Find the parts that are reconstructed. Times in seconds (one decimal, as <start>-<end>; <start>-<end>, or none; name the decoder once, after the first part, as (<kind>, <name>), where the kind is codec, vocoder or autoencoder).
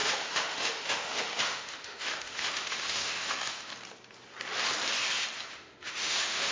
0.0-3.7 (autoencoder, DAC-VAE); 5.5-6.5